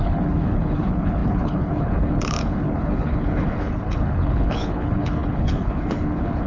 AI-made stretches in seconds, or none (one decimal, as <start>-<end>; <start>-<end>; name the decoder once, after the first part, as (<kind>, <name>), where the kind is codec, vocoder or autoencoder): 0.0-6.5 (codec, HILCodec)